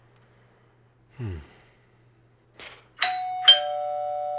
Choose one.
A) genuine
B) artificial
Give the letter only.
A